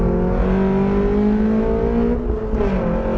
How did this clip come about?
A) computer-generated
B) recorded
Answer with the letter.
B